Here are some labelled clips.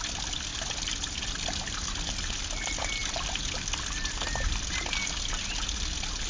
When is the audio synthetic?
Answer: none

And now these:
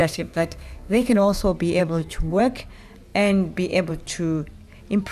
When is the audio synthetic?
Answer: 0.0-1.4 (codec, SNAC); 1.8-2.4

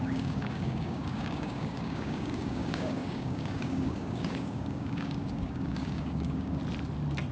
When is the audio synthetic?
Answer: 0.0-6.6 (codec, DAC)

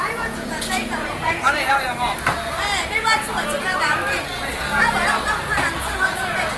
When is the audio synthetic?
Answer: 0.0-1.7 (vocoder, Vocos); 5.7-6.6

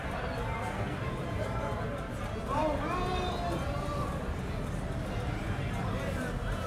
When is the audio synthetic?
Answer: 0.6-1.1 (codec, SNAC)

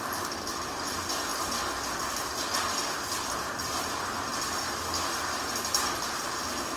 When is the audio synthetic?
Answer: none